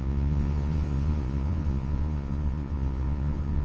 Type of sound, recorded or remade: remade